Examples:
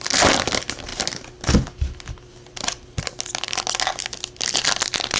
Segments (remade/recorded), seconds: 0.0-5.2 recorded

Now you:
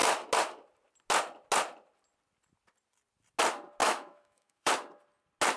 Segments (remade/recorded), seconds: 0.0-3.8 recorded; 3.8-4.7 remade; 4.7-5.6 recorded